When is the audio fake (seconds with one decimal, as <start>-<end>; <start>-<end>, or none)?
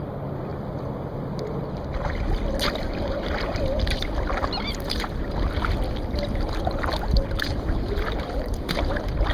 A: none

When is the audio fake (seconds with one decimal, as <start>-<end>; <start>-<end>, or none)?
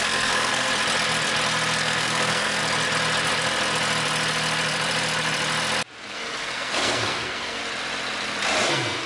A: 0.0-0.7; 1.8-2.6; 6.1-7.6; 8.7-9.1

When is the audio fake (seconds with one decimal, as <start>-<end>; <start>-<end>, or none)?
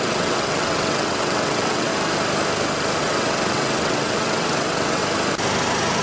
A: 0.0-1.9; 3.0-5.0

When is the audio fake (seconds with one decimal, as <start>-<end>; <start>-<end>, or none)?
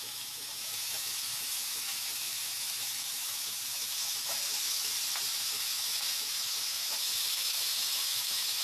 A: 0.0-4.9; 5.4-8.6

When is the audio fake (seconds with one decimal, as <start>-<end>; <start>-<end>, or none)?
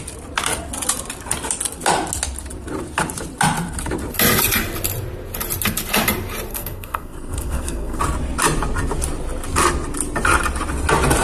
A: 6.5-8.0